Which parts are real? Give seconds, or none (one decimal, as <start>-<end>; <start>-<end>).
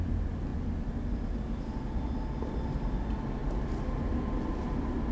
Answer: 0.0-5.1